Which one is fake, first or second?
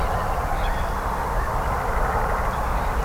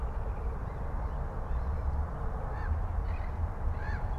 first